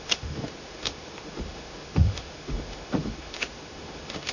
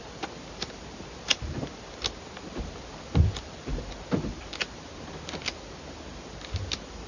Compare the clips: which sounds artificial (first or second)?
first